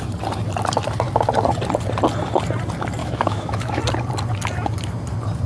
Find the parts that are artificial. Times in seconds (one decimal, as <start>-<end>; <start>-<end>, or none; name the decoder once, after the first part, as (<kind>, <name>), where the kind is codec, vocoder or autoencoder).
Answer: 3.0-3.8 (autoencoder, DAC-VAE)